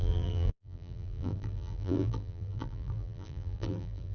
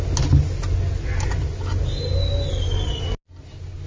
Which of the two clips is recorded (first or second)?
second